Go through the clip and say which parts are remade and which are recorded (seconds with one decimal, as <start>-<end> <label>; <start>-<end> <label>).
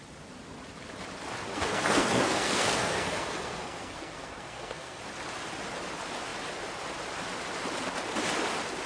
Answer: 0.0-1.5 recorded; 1.5-5.0 remade; 5.0-8.9 recorded